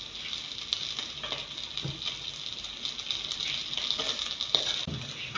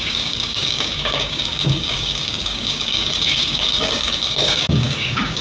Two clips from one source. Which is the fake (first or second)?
second